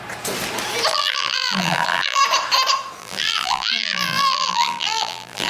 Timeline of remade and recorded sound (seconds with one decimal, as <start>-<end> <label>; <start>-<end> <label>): 0.0-0.9 recorded; 0.9-2.2 remade; 2.2-3.0 recorded; 3.0-5.5 remade